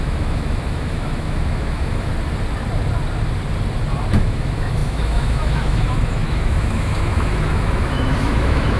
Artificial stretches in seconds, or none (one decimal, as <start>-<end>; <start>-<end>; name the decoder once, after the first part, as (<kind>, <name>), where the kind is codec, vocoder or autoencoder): 0.0-2.1 (autoencoder, DAC-VAE); 4.1-8.8